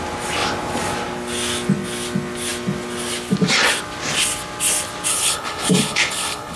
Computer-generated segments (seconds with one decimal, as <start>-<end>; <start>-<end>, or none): 5.1-6.6